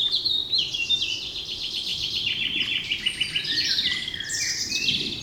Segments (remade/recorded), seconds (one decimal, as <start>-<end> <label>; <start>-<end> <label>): 0.0-5.2 recorded